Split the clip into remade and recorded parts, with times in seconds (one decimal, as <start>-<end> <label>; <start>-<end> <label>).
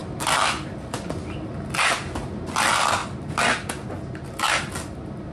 0.0-5.3 recorded